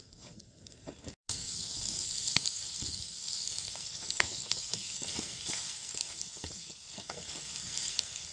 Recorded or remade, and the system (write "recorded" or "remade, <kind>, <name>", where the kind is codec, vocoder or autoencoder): remade, codec, SNAC